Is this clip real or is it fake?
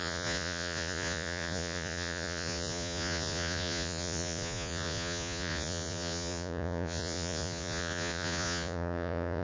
fake